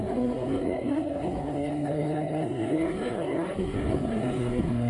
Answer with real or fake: fake